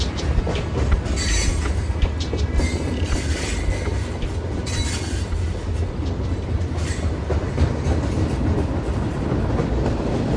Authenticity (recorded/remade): recorded